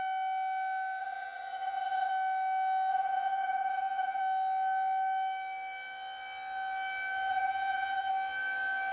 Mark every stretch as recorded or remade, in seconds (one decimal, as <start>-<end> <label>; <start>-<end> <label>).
0.0-1.0 recorded; 1.0-2.1 remade; 2.1-2.9 recorded; 2.9-4.2 remade; 4.2-7.3 recorded; 7.3-8.1 remade; 8.1-8.9 recorded